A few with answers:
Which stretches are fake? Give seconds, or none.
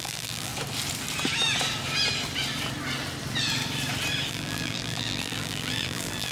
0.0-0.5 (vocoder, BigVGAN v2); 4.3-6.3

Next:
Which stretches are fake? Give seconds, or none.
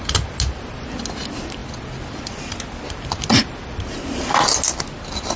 none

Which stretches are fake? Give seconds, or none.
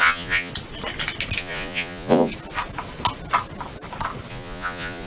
0.0-0.5 (vocoder, Vocos); 1.4-2.3; 4.3-5.1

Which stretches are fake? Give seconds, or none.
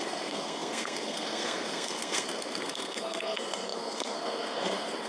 0.0-5.1 (codec, SNAC)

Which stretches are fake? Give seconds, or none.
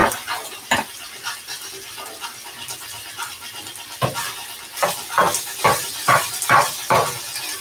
0.0-4.2 (vocoder, BigVGAN v2); 5.2-6.4